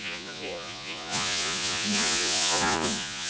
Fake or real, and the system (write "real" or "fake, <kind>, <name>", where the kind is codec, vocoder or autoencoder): fake, vocoder, Vocos